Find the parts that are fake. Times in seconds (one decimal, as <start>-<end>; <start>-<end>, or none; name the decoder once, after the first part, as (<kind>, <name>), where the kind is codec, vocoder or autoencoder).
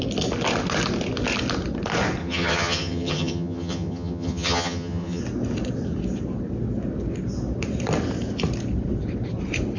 2.2-5.2 (vocoder, HiFi-GAN)